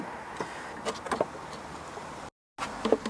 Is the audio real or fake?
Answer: real